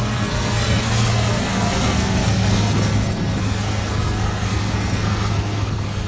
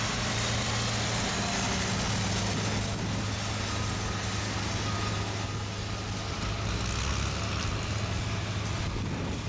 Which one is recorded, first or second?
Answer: second